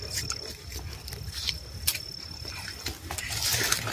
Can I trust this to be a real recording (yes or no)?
yes